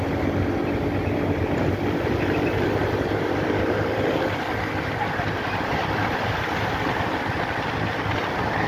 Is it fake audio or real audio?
real